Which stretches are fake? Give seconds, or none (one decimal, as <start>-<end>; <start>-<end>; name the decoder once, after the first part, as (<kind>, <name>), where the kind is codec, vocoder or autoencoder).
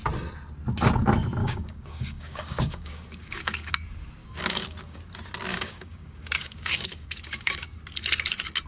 1.4-3.7 (codec, DAC); 4.2-5.0; 5.5-7.8